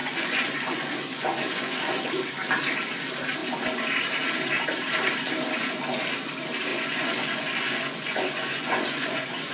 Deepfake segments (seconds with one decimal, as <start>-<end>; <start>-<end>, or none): 0.0-2.1; 6.7-9.5